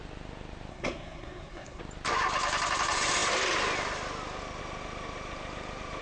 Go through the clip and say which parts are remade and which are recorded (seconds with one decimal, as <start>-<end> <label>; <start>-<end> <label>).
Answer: 0.0-0.7 recorded; 0.7-1.8 remade; 1.8-6.0 recorded